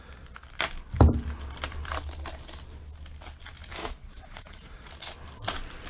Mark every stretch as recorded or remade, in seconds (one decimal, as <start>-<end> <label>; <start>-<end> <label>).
0.0-3.8 recorded; 3.8-4.9 remade; 4.9-5.9 recorded